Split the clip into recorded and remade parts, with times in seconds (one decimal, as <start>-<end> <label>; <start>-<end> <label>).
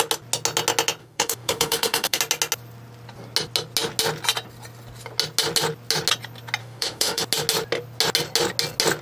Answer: 0.0-1.0 recorded; 1.0-2.2 remade; 2.2-6.6 recorded; 6.6-7.2 remade; 7.2-9.0 recorded